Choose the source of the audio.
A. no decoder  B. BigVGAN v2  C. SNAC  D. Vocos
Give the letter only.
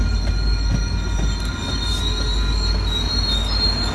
A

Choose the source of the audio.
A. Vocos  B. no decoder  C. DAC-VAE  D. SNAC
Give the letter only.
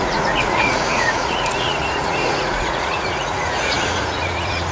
A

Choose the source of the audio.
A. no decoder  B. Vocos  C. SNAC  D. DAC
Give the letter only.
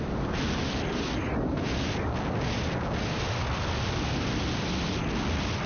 A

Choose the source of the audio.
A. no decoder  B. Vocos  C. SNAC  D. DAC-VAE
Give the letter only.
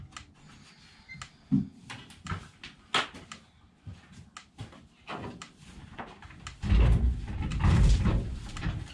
A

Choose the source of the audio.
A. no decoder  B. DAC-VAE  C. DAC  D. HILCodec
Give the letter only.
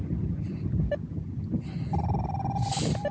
A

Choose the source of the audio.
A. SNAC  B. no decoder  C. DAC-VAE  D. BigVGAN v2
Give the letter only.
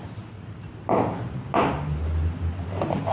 B